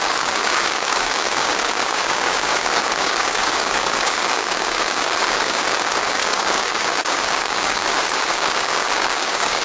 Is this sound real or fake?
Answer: fake